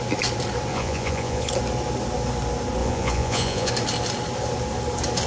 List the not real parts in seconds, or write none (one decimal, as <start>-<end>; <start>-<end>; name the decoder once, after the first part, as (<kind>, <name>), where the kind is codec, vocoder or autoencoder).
0.7-1.5 (vocoder, Vocos); 2.8-3.7